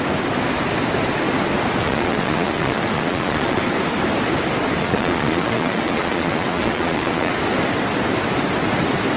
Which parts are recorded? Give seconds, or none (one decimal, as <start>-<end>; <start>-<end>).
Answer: 0.0-1.8; 3.6-4.8; 7.3-9.2